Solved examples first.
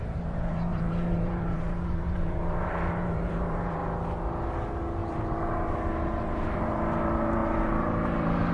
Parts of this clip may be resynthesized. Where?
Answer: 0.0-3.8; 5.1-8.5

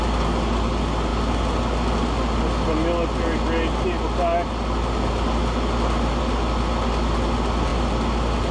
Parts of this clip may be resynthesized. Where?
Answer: none